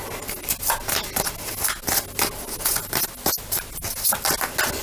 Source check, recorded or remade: recorded